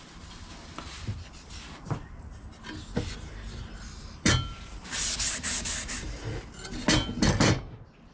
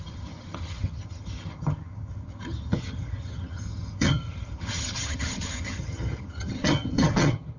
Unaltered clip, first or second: first